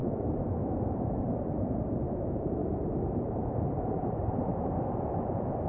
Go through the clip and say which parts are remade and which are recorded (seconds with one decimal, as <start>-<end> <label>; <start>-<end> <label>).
0.0-1.2 recorded; 1.2-2.6 remade; 2.6-3.2 recorded; 3.2-4.5 remade; 4.5-5.7 recorded